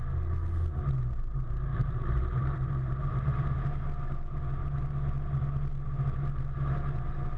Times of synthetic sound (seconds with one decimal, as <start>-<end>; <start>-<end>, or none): 1.7-3.7

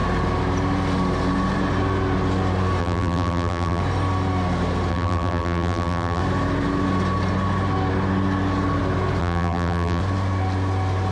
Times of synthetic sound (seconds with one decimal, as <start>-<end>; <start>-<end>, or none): 2.8-3.8; 4.9-6.2; 9.2-10.0

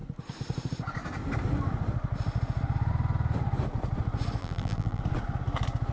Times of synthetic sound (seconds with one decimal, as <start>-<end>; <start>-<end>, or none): 4.4-5.0

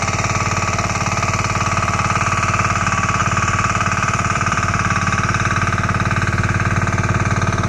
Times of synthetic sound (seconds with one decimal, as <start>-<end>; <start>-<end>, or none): 3.2-7.7